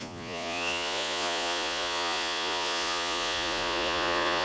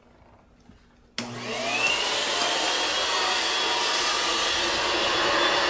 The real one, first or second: second